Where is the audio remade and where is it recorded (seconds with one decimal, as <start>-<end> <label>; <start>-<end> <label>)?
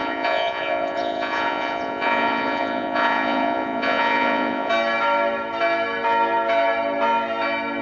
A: 0.0-4.7 remade; 4.7-7.8 recorded